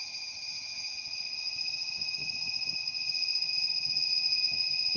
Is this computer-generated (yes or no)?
yes